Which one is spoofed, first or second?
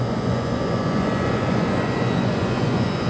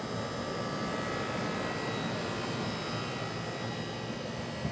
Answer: first